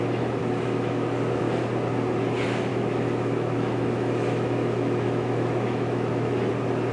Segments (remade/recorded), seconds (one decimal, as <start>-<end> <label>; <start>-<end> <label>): 0.0-0.4 recorded; 0.4-1.4 remade; 1.4-2.7 recorded; 2.7-6.5 remade; 6.5-6.9 recorded